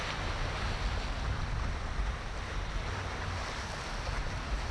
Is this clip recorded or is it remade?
recorded